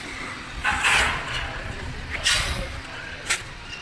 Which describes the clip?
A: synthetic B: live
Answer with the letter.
A